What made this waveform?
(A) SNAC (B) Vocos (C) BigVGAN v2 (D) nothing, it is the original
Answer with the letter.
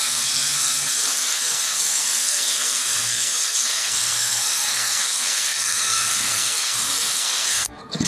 A